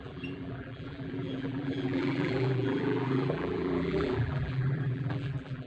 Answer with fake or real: fake